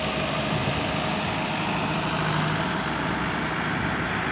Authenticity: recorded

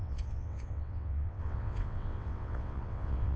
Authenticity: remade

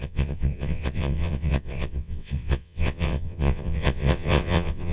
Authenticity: remade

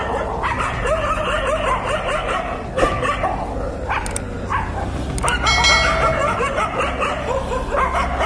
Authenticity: recorded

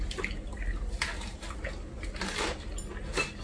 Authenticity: recorded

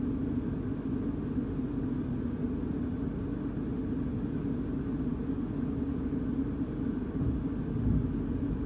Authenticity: recorded